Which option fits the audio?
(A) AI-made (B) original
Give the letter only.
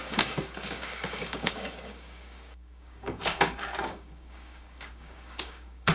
A